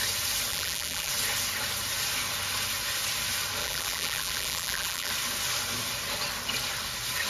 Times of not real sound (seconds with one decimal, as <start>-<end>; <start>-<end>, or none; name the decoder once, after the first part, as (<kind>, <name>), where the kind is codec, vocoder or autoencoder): 0.5-1.1 (vocoder, BigVGAN v2); 3.6-5.1